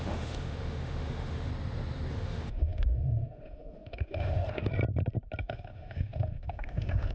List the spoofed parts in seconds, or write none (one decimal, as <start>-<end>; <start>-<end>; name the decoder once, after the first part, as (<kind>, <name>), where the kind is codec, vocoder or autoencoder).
0.0-1.5 (autoencoder, DAC-VAE); 2.1-4.7; 5.4-7.1